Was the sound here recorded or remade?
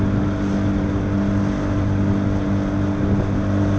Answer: recorded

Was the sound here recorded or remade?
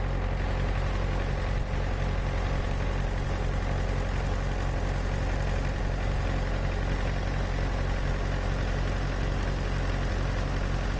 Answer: recorded